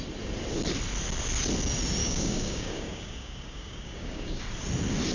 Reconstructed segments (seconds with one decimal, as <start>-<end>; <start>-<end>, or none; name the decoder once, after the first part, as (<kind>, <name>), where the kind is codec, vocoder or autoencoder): 2.0-4.4 (codec, DAC)